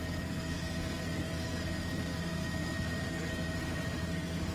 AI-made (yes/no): yes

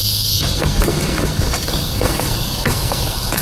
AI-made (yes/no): yes